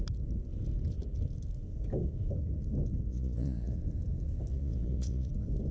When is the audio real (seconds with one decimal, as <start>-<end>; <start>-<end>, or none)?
0.0-3.1; 3.8-4.5; 5.3-5.7

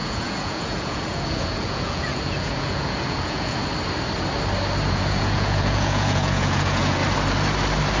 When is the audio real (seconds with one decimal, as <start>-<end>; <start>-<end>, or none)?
3.6-4.9; 7.0-8.0

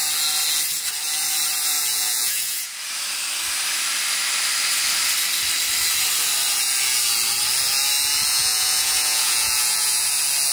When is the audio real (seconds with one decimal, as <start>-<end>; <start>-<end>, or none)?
0.0-1.9; 2.7-8.3; 10.1-10.5

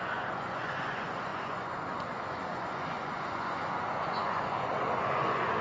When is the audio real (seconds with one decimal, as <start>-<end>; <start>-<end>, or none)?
none